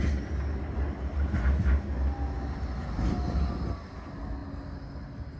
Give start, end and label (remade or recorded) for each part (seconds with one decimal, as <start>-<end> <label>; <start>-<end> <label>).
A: 0.0-5.4 recorded